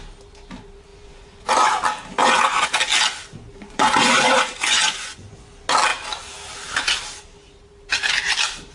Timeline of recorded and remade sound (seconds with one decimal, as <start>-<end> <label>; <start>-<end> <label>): 0.0-0.9 recorded; 0.9-1.7 remade; 1.7-2.2 recorded; 2.2-2.8 remade; 2.8-3.5 recorded; 3.5-5.5 remade; 5.5-8.7 recorded